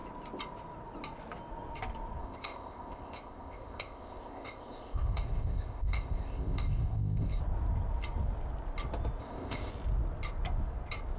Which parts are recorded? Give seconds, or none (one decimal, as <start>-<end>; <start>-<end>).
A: 0.0-2.2; 7.4-9.2; 9.7-11.2